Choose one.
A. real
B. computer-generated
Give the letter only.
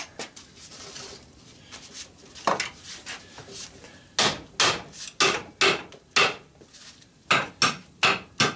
A